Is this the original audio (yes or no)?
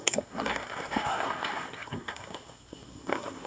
no